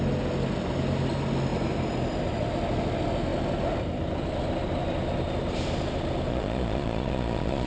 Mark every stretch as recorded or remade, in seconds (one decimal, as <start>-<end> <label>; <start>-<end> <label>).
0.0-6.3 recorded; 6.3-7.7 remade